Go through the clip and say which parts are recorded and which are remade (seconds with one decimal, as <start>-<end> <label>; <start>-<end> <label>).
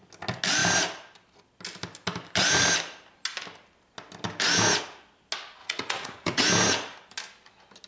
0.0-5.6 recorded; 5.6-6.4 remade; 6.4-7.9 recorded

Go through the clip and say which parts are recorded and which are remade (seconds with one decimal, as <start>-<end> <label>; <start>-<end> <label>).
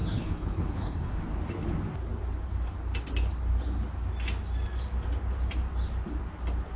0.0-1.2 remade; 1.2-6.8 recorded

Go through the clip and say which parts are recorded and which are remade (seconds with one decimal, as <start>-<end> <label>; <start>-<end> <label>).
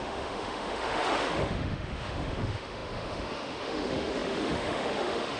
0.0-5.4 remade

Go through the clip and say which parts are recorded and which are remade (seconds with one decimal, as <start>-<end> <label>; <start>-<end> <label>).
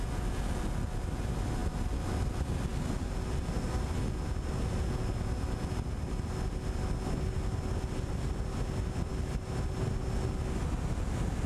0.0-11.5 recorded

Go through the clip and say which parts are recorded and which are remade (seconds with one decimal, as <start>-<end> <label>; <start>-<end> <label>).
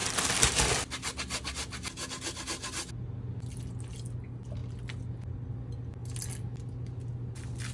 0.0-7.7 recorded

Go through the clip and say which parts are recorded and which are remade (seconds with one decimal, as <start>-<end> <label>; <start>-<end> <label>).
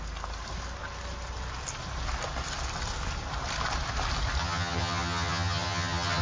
0.0-4.4 recorded; 4.4-6.2 remade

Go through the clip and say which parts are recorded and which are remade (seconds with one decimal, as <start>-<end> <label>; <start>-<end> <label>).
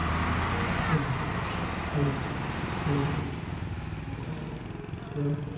0.0-5.6 recorded